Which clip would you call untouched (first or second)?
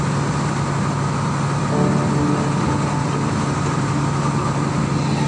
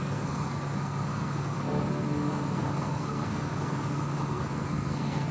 first